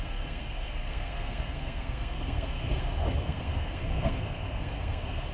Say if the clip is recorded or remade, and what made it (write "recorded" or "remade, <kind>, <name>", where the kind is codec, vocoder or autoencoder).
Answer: remade, codec, SNAC